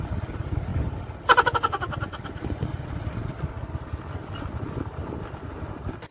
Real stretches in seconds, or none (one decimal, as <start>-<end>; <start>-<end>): 0.0-6.1